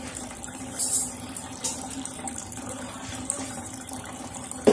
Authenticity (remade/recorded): remade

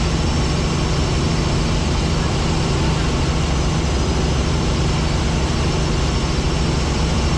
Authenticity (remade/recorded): recorded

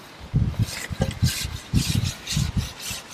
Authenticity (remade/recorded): recorded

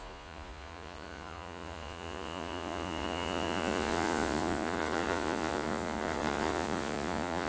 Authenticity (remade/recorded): remade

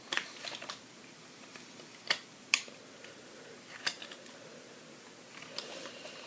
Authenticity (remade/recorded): recorded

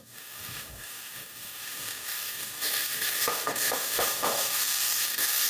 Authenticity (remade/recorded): remade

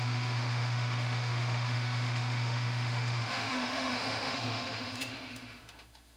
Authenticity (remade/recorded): remade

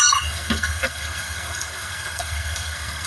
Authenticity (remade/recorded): remade